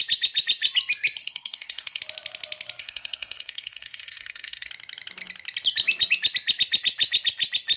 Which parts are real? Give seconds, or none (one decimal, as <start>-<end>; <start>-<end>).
0.0-1.2; 2.0-2.8; 4.7-7.8